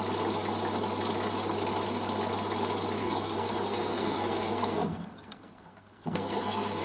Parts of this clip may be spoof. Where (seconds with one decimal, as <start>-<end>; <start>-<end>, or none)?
3.0-6.8